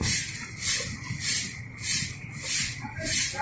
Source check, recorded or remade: recorded